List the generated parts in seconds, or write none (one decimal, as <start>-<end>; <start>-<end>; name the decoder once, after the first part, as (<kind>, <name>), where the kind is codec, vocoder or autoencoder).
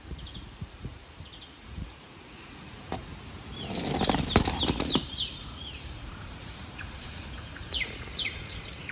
0.0-3.1 (vocoder, Vocos); 4.8-8.9